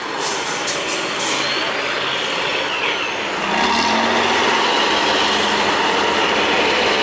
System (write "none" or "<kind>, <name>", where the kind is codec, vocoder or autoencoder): none